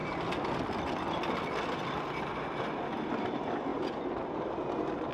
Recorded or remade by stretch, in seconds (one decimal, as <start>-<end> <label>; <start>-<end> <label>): 0.0-3.7 recorded; 3.7-4.5 remade; 4.5-5.1 recorded